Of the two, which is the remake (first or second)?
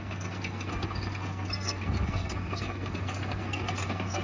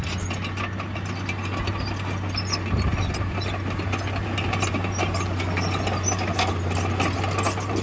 first